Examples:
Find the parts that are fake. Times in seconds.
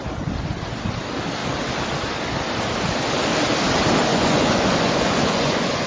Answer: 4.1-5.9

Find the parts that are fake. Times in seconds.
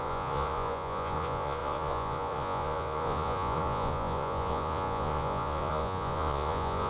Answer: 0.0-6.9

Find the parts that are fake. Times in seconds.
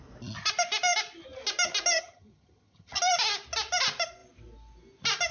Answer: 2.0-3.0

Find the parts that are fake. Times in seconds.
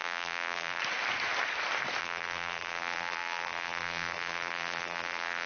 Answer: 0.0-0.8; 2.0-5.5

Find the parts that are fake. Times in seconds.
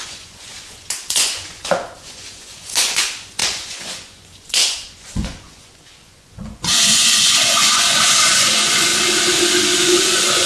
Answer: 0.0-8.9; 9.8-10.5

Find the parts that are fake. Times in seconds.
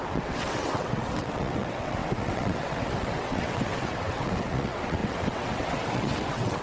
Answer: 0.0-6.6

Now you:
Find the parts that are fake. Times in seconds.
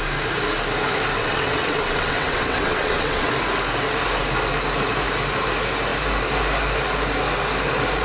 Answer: 1.2-3.3